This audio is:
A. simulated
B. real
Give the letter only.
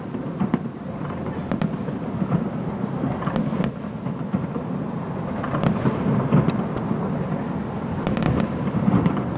B